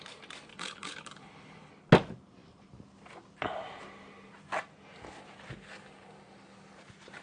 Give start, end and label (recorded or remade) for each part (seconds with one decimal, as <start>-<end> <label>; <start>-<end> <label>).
0.0-0.5 recorded; 0.5-1.7 remade; 1.7-7.2 recorded